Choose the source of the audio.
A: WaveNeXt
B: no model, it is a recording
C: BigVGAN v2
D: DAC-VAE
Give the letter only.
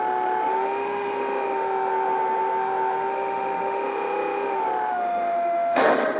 D